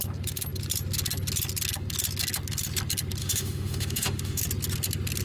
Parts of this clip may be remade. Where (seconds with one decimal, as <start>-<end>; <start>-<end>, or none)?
3.2-4.4